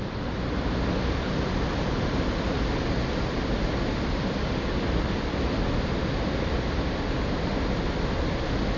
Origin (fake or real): real